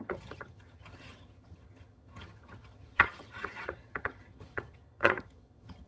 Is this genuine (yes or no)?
no